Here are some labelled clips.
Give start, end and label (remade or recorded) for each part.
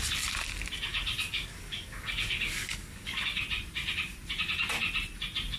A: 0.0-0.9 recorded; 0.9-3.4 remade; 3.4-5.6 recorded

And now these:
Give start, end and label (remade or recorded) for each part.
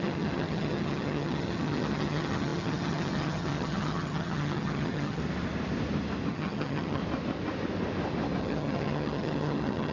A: 0.0-5.2 remade; 5.2-6.3 recorded; 6.3-7.0 remade; 7.0-8.4 recorded; 8.4-9.9 remade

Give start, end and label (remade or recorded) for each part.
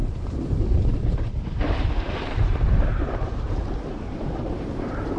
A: 0.0-5.2 remade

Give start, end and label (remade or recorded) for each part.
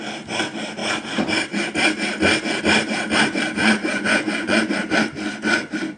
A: 0.0-3.6 recorded; 3.6-4.6 remade; 4.6-6.0 recorded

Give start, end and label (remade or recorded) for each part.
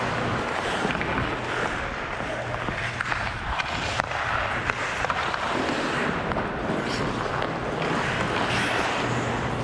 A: 0.0-1.1 recorded; 1.1-2.3 remade; 2.3-9.6 recorded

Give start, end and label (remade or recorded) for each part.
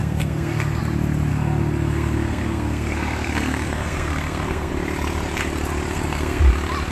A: 0.0-0.8 remade; 0.8-1.3 recorded; 1.3-4.7 remade; 4.7-5.9 recorded; 5.9-6.4 remade; 6.4-6.9 recorded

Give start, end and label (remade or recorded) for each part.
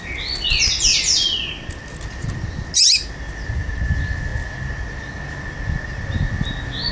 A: 0.0-6.9 recorded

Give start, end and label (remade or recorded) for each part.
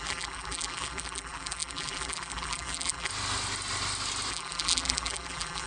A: 0.0-3.1 remade; 3.1-4.3 recorded; 4.3-5.7 remade